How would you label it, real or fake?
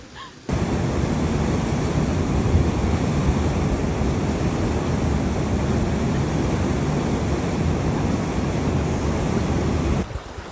real